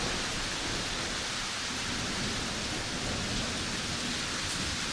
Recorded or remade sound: recorded